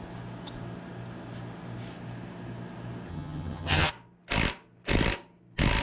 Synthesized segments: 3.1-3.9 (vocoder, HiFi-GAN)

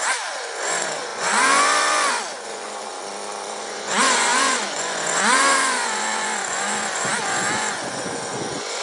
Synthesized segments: 0.0-2.9 (vocoder, Vocos); 3.5-8.8

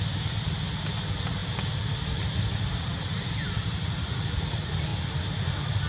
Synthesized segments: none

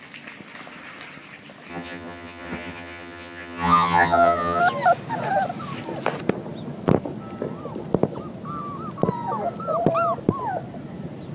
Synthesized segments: 1.7-4.6 (vocoder, HiFi-GAN)

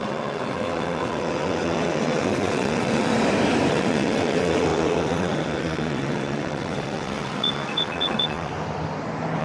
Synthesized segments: 0.0-3.1 (vocoder, WaveNeXt); 3.7-8.5